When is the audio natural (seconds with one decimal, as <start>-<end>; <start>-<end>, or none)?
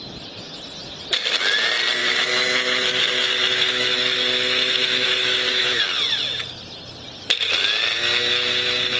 0.0-2.0; 5.8-9.0